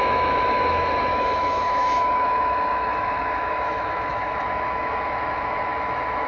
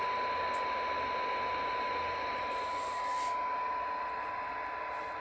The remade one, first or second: first